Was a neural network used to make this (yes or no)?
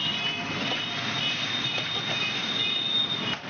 no